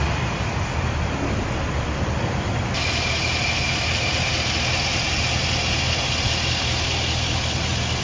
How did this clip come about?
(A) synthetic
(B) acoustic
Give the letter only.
B